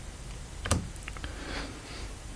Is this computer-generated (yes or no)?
yes